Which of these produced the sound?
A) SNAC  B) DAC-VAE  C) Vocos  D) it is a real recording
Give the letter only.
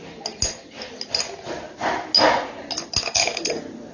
D